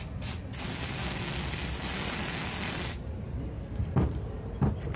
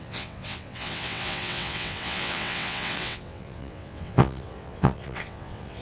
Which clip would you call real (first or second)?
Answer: first